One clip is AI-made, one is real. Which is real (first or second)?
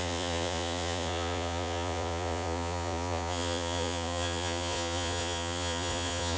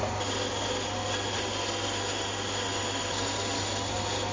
second